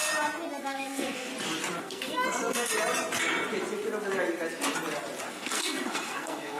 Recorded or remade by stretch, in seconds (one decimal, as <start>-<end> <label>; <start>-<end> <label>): 0.0-0.6 recorded; 0.6-1.3 remade; 1.3-1.8 recorded; 1.8-2.7 remade; 2.7-5.3 recorded; 5.3-6.6 remade